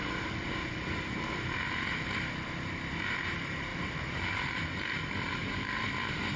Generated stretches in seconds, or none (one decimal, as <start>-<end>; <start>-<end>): 3.7-5.9